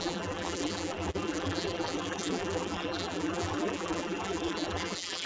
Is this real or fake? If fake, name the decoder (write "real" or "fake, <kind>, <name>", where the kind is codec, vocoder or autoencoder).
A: fake, vocoder, BigVGAN v2